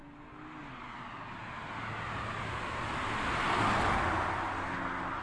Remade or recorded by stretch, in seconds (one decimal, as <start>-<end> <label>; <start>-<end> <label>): 0.0-5.2 recorded